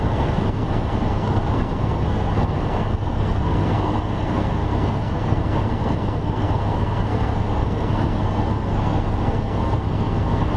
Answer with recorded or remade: remade